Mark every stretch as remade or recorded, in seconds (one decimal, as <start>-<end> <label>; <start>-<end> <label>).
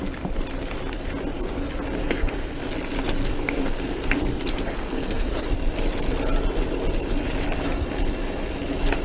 0.0-2.0 recorded; 2.0-2.6 remade; 2.6-3.2 recorded; 3.2-5.4 remade; 5.4-9.0 recorded